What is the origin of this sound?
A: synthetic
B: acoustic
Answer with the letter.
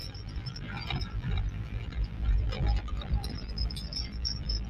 A